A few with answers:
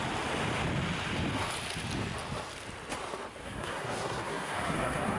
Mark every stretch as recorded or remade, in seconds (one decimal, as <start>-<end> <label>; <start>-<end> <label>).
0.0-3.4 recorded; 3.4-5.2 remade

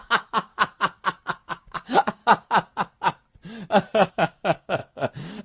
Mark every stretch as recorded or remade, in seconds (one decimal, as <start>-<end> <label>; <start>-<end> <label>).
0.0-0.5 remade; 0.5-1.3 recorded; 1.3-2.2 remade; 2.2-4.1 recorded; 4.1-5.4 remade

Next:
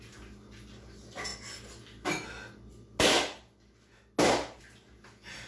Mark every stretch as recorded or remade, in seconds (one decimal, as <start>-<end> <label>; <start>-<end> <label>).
0.0-5.5 recorded